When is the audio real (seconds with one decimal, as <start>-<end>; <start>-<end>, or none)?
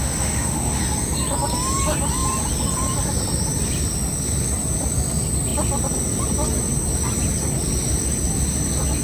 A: 0.8-9.0